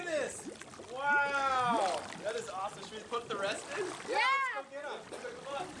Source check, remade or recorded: recorded